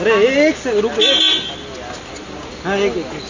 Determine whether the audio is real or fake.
real